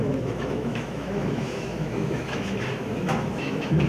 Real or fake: fake